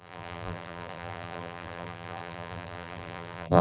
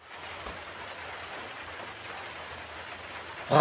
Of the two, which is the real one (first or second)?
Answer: second